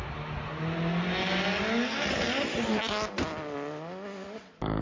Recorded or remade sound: recorded